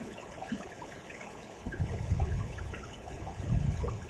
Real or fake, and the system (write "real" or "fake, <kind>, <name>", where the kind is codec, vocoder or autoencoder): fake, codec, HILCodec